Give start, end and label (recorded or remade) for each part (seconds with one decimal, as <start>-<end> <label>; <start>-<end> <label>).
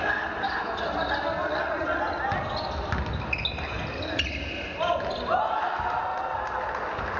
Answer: 0.0-1.4 recorded; 1.4-2.0 remade; 2.0-7.2 recorded